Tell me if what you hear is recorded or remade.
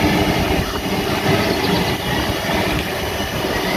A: recorded